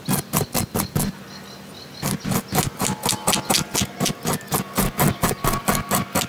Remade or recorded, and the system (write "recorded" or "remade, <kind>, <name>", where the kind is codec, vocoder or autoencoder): recorded